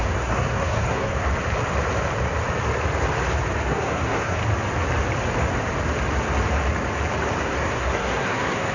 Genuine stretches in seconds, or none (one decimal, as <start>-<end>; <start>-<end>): 1.3-3.7; 4.4-7.4